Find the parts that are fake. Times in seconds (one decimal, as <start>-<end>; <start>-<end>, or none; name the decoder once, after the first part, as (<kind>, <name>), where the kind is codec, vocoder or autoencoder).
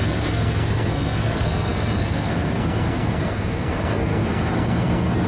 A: 0.0-5.3 (codec, SNAC)